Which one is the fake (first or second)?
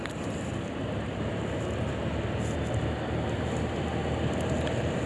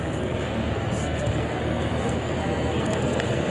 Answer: second